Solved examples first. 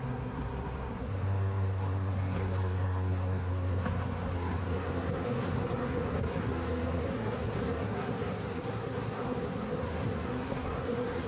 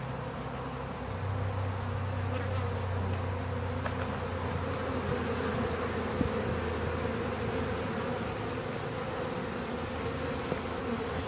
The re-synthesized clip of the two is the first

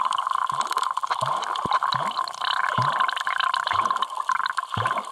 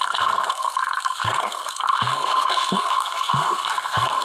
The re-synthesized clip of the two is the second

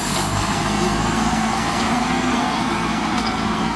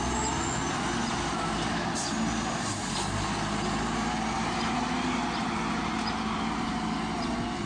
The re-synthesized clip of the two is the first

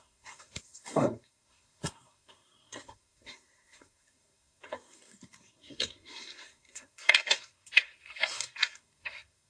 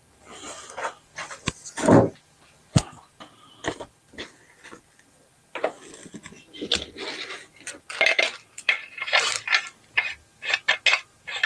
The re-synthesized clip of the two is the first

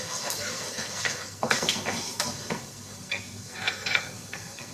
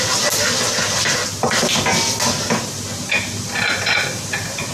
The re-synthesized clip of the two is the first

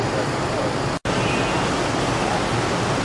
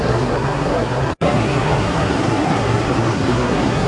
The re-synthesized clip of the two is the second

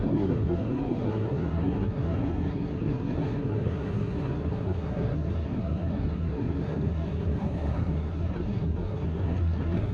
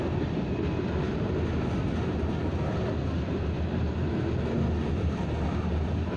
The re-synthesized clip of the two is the first